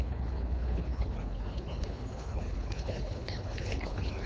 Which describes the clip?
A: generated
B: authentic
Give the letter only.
A